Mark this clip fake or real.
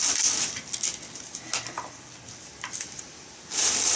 real